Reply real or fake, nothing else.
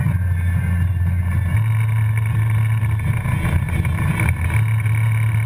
real